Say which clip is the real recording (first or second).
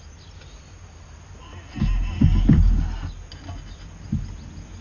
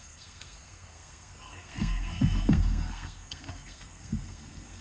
first